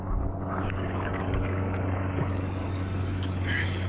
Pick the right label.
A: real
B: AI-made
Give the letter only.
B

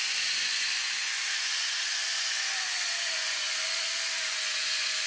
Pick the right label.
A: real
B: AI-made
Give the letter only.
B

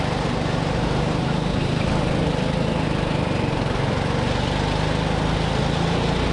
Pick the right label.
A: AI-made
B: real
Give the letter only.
B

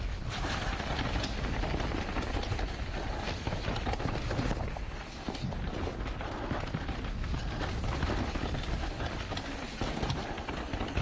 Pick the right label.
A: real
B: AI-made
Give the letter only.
A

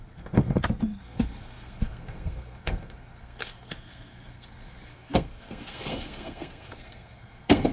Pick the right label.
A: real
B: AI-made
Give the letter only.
B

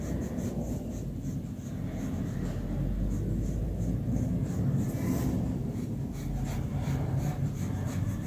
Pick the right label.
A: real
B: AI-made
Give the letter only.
A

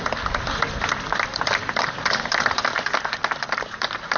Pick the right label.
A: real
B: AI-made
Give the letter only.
A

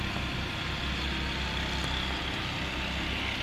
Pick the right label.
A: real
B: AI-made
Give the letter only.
A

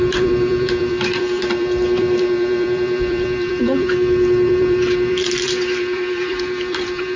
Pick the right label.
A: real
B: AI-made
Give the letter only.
B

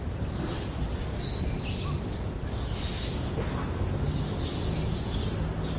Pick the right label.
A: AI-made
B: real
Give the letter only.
B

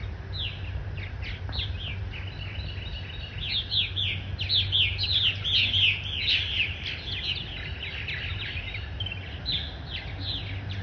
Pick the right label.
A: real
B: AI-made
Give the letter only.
A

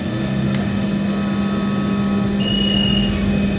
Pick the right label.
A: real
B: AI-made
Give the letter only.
A